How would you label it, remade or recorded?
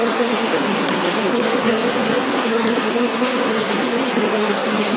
remade